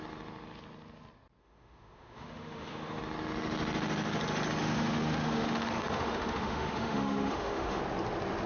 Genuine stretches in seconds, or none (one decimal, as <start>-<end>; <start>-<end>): 0.0-1.4; 3.0-4.6; 7.8-8.5